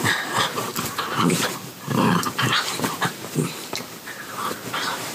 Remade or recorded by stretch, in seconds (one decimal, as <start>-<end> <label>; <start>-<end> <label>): 0.0-3.6 remade; 3.6-4.2 recorded; 4.2-5.1 remade